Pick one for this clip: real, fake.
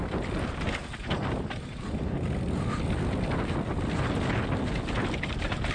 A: real